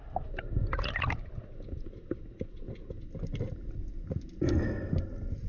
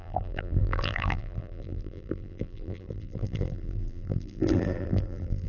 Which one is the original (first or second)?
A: first